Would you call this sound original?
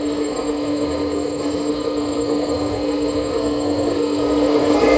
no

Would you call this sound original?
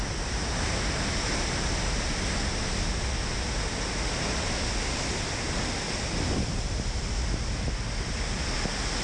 yes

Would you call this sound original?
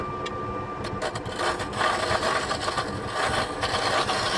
yes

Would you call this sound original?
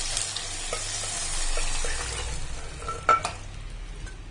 yes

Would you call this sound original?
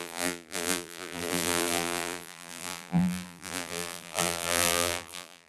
no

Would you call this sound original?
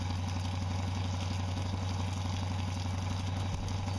yes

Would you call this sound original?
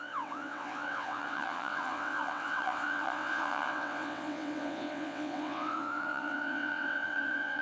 no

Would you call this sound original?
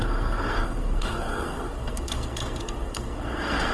no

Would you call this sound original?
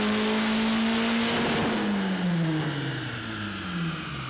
yes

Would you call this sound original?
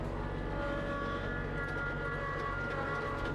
yes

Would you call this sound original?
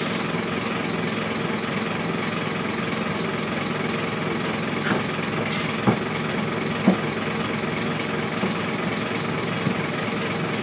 yes